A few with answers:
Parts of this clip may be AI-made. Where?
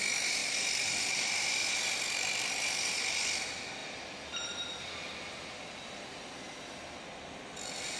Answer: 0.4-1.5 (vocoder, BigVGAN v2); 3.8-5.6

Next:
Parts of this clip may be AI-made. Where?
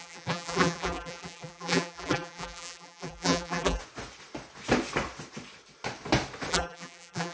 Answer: 0.0-3.8 (vocoder, BigVGAN v2); 6.5-7.3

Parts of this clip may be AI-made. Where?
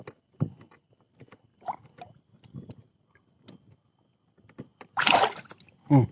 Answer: 4.7-5.2 (vocoder, BigVGAN v2)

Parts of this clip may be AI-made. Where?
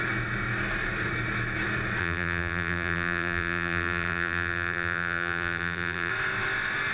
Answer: 2.0-6.1 (vocoder, BigVGAN v2)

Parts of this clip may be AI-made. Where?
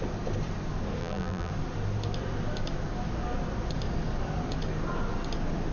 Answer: 1.0-1.5 (vocoder, BigVGAN v2)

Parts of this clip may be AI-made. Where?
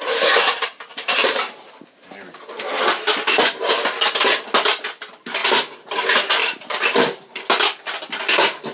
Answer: 0.9-1.7 (vocoder, BigVGAN v2); 5.4-5.9; 6.4-7.4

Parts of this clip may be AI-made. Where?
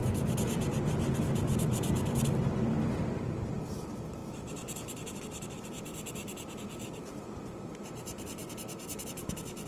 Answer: 3.5-8.4 (vocoder, BigVGAN v2); 9.0-9.7